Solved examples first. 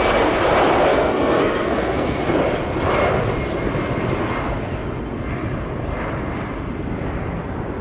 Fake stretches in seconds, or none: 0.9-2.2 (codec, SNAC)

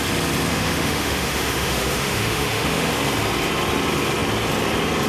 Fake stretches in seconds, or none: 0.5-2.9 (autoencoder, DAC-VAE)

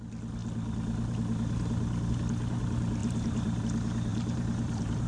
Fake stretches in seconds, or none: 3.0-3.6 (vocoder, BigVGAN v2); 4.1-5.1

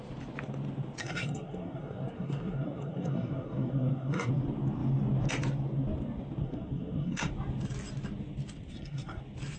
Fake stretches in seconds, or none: 1.0-4.3 (codec, SNAC); 6.4-7.3; 8.7-9.2

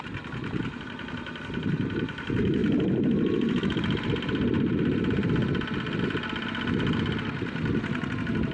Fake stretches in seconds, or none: none

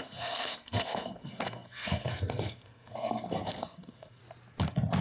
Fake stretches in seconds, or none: 0.0-4.2 (codec, SNAC)